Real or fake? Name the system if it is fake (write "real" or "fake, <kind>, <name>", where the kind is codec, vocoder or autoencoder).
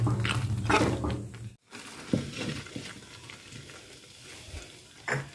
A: real